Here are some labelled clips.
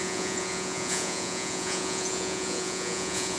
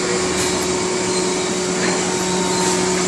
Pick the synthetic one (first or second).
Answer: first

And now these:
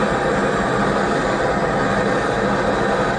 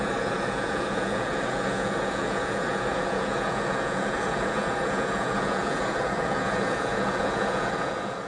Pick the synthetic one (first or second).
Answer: second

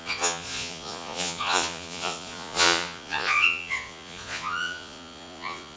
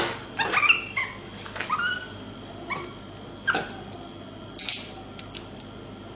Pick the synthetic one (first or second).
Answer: first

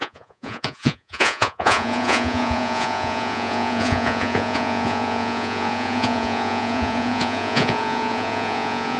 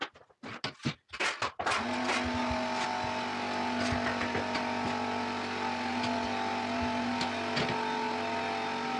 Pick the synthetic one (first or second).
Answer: first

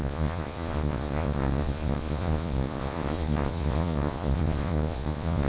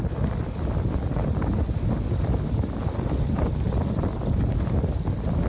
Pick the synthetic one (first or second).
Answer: first